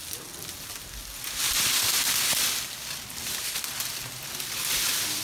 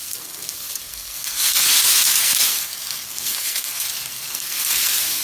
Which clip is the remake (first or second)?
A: second